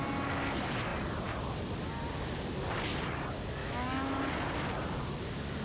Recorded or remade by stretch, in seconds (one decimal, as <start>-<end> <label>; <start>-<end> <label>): 0.0-3.6 recorded; 3.6-4.2 remade; 4.2-5.6 recorded